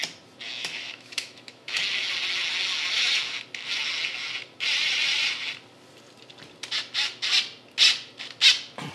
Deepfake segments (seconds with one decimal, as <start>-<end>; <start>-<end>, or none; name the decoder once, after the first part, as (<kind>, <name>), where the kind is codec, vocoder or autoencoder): 0.6-1.8 (autoencoder, DAC-VAE)